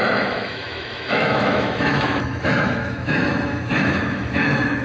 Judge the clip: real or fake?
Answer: fake